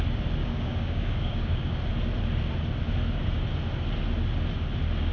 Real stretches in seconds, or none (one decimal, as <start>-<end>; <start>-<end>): 0.0-0.4; 1.8-5.1